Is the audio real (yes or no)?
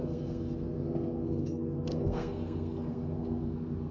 no